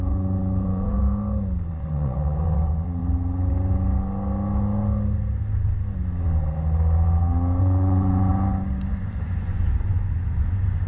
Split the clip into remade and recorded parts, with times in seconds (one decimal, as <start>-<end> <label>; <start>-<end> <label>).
0.0-1.0 remade; 1.0-1.7 recorded; 1.7-3.0 remade; 3.0-7.6 recorded; 7.6-8.3 remade; 8.3-8.9 recorded; 8.9-10.9 remade